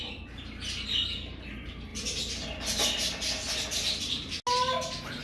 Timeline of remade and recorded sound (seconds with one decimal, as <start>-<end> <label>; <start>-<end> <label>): 0.0-5.2 recorded